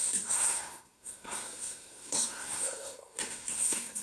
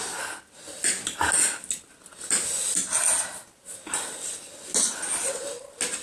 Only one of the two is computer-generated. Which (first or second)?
first